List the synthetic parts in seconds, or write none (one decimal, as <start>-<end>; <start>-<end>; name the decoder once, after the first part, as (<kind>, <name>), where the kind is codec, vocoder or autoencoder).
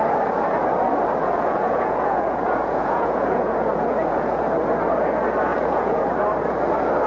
1.2-4.4 (vocoder, Vocos); 5.5-6.1